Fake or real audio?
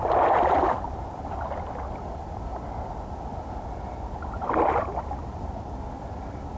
real